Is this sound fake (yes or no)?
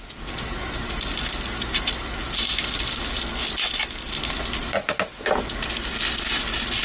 no